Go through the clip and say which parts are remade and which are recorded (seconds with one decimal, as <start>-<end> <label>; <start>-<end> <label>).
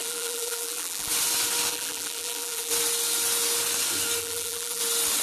0.0-1.1 remade; 1.1-1.7 recorded; 1.7-2.7 remade; 2.7-4.2 recorded; 4.2-4.8 remade; 4.8-5.2 recorded